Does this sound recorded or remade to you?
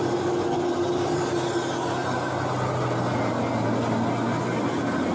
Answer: recorded